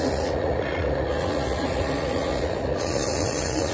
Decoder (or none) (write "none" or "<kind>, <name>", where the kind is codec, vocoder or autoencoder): vocoder, Vocos